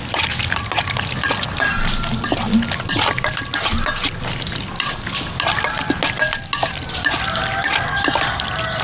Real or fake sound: real